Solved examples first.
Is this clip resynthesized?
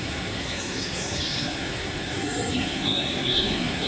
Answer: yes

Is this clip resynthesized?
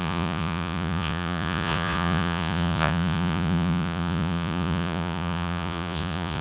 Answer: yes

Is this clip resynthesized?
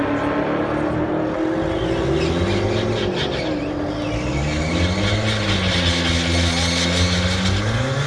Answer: no